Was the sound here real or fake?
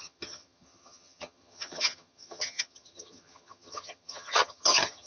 fake